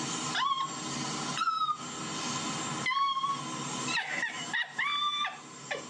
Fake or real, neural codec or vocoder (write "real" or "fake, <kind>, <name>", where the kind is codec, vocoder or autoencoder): real